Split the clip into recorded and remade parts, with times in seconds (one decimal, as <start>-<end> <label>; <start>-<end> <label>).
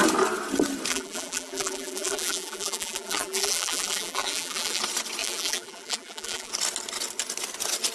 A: 0.0-0.9 recorded; 0.9-4.8 remade; 4.8-5.2 recorded; 5.2-6.5 remade; 6.5-7.9 recorded